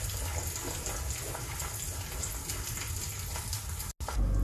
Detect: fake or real real